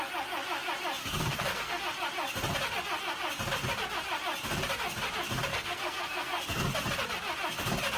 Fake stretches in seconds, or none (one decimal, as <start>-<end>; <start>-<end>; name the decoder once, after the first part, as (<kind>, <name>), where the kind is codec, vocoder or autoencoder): 1.0-1.8 (codec, SNAC); 5.5-6.6